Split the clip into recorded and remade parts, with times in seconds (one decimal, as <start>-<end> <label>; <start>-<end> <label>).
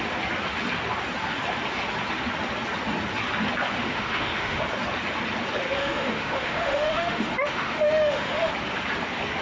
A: 0.0-3.8 recorded; 3.8-4.6 remade; 4.6-5.8 recorded; 5.8-8.5 remade; 8.5-9.4 recorded